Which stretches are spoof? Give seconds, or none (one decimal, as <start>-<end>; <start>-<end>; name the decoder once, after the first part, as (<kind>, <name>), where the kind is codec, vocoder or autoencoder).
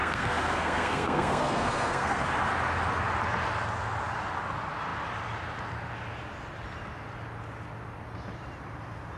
0.0-2.2 (codec, SNAC)